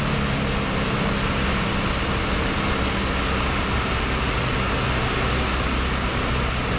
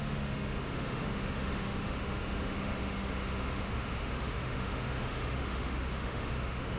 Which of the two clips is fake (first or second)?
second